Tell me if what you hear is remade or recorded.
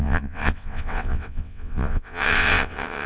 remade